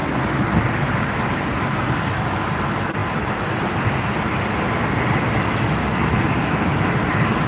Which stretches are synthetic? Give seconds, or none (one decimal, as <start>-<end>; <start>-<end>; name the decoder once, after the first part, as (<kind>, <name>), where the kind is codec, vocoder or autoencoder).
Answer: none